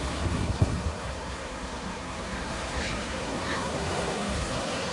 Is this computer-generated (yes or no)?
yes